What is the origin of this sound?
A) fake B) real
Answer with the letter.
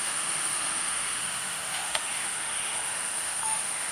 A